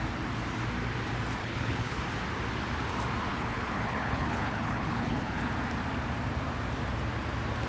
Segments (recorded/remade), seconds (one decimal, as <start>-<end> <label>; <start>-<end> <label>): 0.0-1.4 recorded; 1.4-2.0 remade; 2.0-3.3 recorded; 3.3-5.5 remade; 5.5-7.7 recorded